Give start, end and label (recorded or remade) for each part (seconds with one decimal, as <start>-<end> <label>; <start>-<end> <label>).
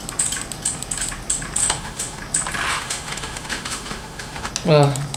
0.0-1.6 recorded; 1.6-2.2 remade; 2.2-2.7 recorded; 2.7-4.5 remade; 4.5-5.2 recorded